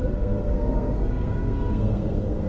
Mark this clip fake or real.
fake